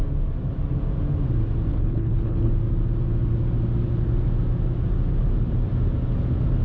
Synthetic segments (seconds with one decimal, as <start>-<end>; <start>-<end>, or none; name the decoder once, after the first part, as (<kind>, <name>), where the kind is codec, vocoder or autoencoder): 1.7-2.5 (codec, HILCodec)